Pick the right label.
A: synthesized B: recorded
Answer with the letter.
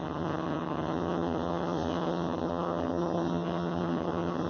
A